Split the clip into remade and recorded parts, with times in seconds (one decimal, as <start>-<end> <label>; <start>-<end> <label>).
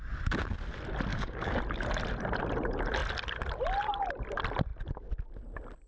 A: 0.0-1.1 recorded; 1.1-1.6 remade; 1.6-5.9 recorded